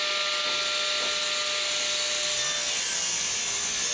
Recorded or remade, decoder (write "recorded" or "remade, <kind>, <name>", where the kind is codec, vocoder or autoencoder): recorded